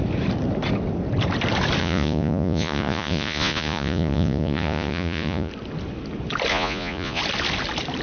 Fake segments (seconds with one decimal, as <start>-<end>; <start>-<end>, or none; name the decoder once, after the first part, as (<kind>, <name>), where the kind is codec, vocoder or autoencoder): 1.8-5.5 (vocoder, Vocos); 6.5-7.2